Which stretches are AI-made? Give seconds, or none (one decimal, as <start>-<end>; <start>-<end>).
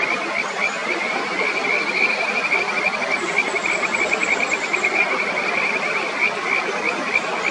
0.8-1.3